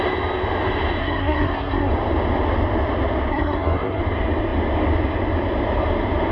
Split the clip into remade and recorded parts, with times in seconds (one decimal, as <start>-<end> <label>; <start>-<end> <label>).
0.0-1.0 recorded; 1.0-1.9 remade; 1.9-3.3 recorded; 3.3-4.0 remade; 4.0-6.3 recorded